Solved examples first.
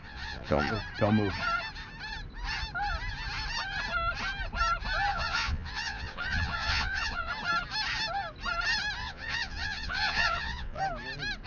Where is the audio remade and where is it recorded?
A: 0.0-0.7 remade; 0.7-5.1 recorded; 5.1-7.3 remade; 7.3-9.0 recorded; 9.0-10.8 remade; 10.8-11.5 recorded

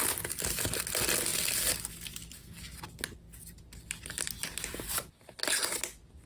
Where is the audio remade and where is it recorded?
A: 0.0-6.3 recorded

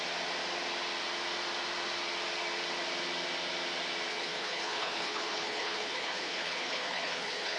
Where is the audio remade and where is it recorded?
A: 0.0-4.1 recorded; 4.1-7.6 remade